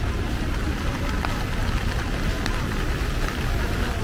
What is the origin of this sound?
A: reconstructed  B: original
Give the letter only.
A